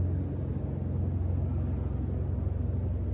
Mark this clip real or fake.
real